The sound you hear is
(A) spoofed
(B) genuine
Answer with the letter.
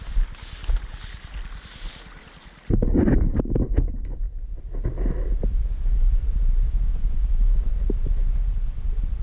B